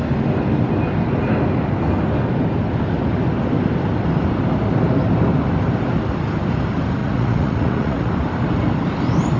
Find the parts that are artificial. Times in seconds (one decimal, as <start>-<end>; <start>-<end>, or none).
7.0-8.1